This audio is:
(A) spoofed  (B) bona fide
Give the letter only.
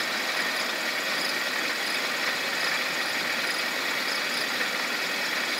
B